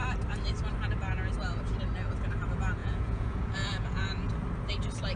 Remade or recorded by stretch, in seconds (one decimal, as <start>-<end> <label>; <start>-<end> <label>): 0.0-2.8 recorded; 2.8-4.3 remade; 4.3-5.2 recorded